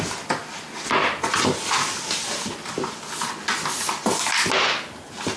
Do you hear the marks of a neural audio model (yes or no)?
no